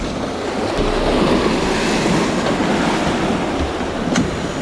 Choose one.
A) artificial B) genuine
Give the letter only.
B